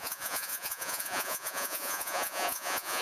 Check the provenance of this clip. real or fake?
fake